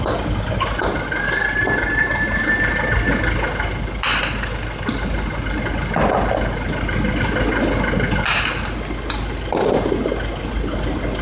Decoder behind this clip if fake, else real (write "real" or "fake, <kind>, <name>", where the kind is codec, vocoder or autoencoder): real